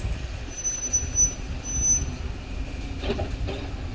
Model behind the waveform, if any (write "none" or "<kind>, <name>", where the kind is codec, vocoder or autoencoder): none